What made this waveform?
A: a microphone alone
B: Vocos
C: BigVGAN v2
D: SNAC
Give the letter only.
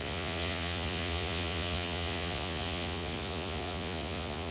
B